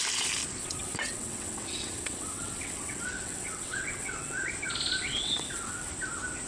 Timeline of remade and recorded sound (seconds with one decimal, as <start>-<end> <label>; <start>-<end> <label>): 0.0-0.6 recorded; 0.6-4.5 remade; 4.5-5.1 recorded; 5.1-5.9 remade; 5.9-6.5 recorded